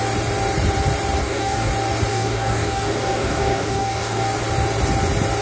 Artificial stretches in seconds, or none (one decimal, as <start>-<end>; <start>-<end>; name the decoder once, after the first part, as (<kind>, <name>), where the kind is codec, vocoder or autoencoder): 1.2-1.7 (codec, DAC); 2.1-4.4